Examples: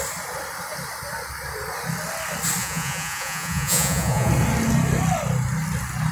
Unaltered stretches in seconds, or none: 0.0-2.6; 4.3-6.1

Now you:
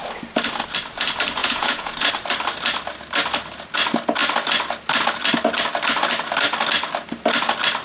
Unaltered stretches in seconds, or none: 0.0-1.4; 2.1-7.8

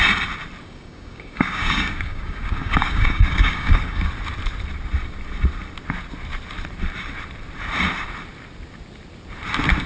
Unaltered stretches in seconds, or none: 0.0-0.6; 4.1-9.9

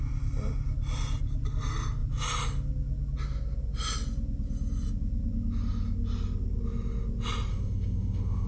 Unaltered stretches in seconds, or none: 0.0-7.5

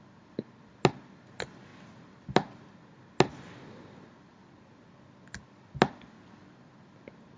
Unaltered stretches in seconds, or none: 0.0-7.4

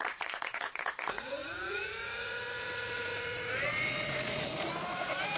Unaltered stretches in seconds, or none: none

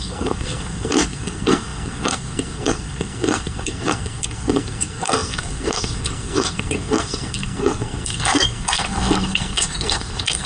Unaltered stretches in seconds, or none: none

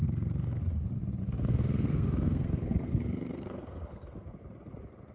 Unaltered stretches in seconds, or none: 0.6-1.2; 4.3-5.1